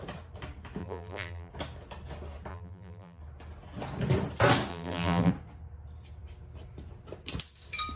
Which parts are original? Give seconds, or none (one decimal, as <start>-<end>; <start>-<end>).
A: 0.0-0.8; 1.5-2.5; 3.2-4.7; 5.3-8.0